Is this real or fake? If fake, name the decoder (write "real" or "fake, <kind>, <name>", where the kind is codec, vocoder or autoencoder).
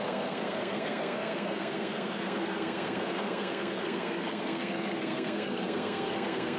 fake, codec, SNAC